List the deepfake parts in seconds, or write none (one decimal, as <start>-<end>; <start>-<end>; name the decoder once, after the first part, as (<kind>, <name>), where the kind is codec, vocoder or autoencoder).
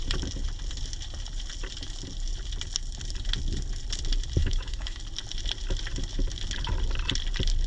4.4-5.0 (autoencoder, DAC-VAE)